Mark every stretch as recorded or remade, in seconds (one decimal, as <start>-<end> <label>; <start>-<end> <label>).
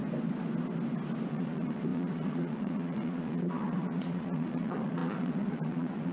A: 0.0-1.3 recorded; 1.3-6.1 remade